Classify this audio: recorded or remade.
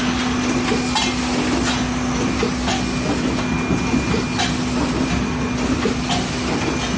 recorded